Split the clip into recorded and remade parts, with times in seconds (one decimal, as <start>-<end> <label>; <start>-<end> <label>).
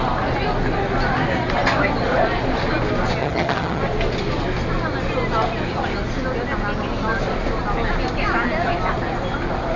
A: 0.0-3.2 recorded; 3.2-3.8 remade; 3.8-9.8 recorded